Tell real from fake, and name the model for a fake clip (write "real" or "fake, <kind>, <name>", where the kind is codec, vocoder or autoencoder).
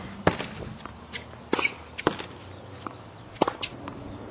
real